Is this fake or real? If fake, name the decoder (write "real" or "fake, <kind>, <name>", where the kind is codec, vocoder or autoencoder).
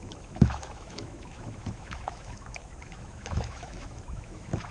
fake, autoencoder, DAC-VAE